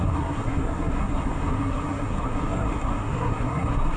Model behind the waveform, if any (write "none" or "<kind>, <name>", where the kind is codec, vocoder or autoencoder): codec, SNAC